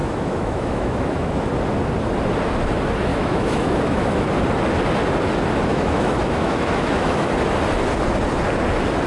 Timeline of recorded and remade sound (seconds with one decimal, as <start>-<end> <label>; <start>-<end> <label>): 0.0-1.5 remade; 1.5-3.1 recorded; 3.1-4.3 remade; 4.3-5.7 recorded; 5.7-7.3 remade; 7.3-9.1 recorded